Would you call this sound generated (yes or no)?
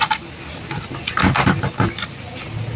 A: no